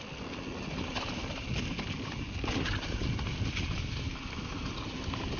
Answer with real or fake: real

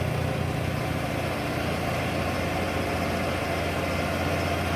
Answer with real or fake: real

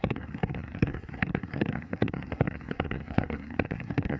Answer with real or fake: fake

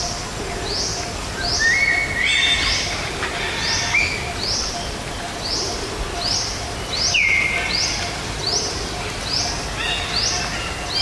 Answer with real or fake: real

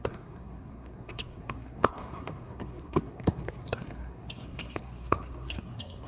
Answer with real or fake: fake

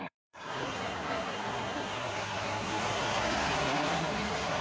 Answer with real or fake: fake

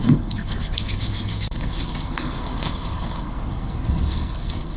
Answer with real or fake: fake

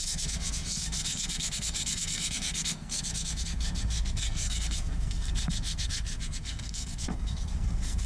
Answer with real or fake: fake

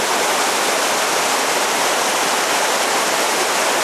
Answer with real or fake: real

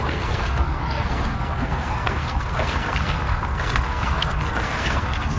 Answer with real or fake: fake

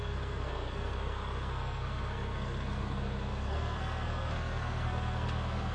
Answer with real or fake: fake